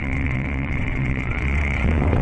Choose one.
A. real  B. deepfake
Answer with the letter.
B